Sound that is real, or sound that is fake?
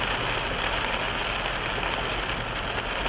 real